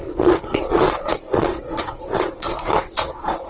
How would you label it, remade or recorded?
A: remade